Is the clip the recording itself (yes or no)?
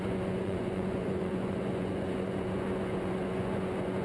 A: no